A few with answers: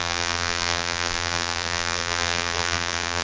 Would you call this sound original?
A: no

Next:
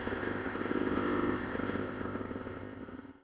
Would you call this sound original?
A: no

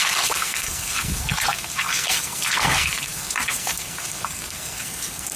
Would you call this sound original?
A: no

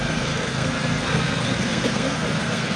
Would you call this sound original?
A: no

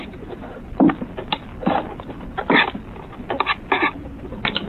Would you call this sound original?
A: yes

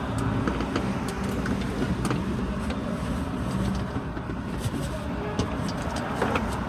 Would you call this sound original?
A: yes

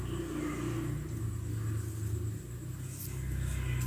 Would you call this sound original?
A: yes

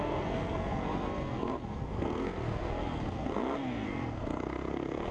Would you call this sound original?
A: no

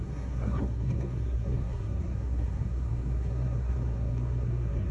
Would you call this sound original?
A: no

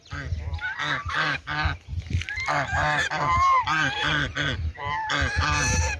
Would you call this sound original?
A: yes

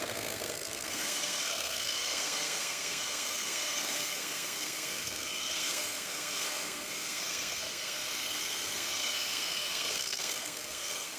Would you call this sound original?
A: no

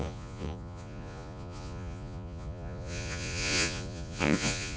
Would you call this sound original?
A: no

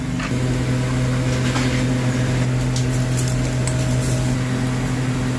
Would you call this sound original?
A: yes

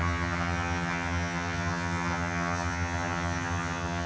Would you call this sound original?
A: no